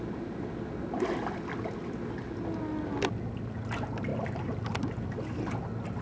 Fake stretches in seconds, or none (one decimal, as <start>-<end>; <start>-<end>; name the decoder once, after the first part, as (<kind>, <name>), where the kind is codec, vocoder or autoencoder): none